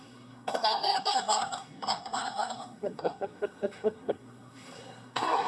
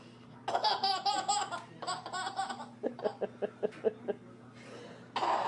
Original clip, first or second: second